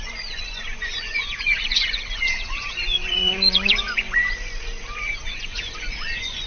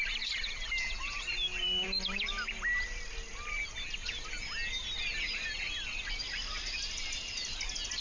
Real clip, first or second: second